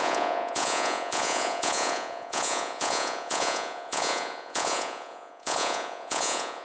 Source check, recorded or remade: remade